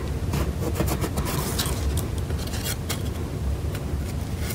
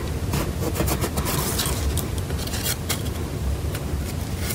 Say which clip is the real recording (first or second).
first